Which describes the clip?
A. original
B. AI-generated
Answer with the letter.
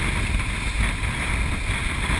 A